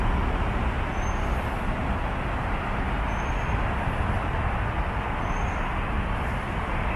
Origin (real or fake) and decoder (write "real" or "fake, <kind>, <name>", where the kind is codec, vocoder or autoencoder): real